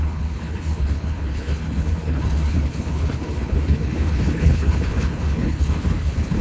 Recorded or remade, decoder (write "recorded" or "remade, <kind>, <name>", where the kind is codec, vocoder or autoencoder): remade, codec, HILCodec